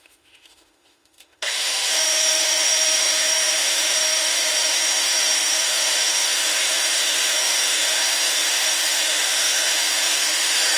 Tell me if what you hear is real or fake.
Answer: fake